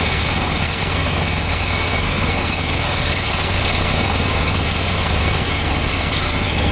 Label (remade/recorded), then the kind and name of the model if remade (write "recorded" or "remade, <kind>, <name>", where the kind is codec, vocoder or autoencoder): remade, codec, SNAC